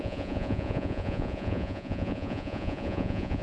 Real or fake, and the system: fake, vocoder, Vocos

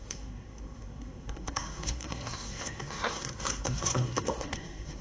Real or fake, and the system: fake, codec, SNAC